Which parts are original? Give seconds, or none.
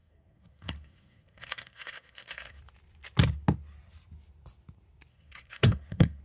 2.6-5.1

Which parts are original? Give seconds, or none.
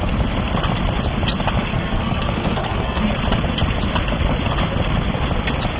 0.0-1.7; 3.0-5.8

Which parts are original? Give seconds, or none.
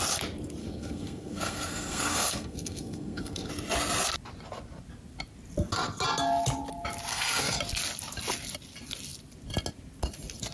0.0-0.6; 3.5-7.1; 7.6-10.5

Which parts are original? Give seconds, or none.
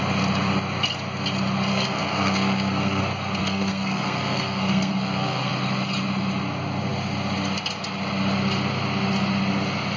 0.0-1.7; 3.0-3.4; 5.5-10.0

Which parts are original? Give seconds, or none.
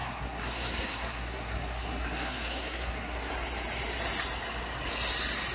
3.3-5.5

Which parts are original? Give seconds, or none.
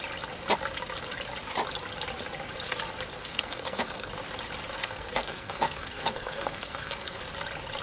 0.0-3.1; 4.1-4.8; 7.2-7.8